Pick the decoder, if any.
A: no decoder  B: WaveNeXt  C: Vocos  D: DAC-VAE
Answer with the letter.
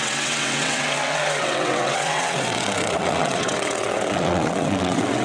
B